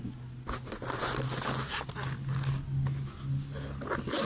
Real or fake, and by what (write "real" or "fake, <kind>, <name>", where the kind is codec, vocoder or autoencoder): real